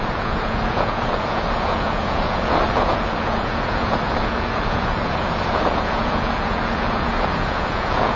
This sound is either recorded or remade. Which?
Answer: remade